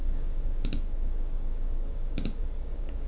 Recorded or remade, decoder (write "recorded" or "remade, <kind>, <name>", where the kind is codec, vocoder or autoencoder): remade, codec, DAC